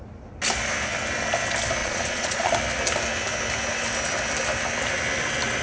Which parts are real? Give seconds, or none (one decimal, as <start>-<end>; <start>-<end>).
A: 0.0-1.8; 2.5-5.6